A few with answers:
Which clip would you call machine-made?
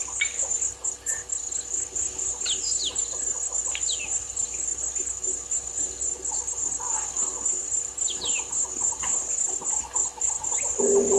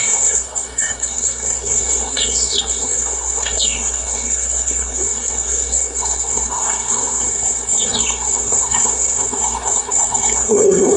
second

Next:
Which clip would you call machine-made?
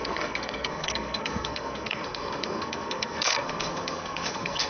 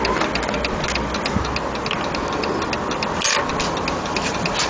first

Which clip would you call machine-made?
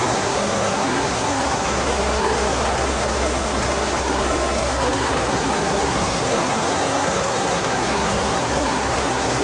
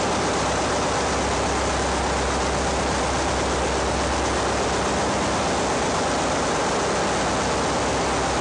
first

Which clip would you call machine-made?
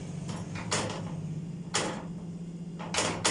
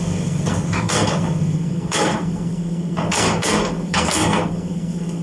second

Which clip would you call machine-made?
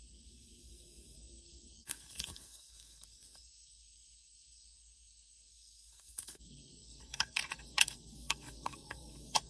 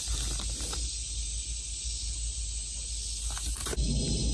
first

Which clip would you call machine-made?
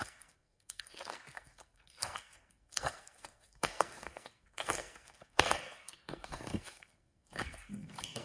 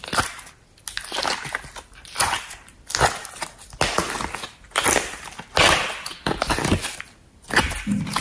first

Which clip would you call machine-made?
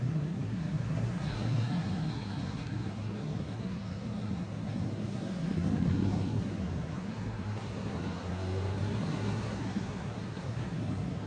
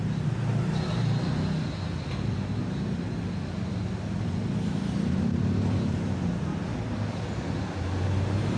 first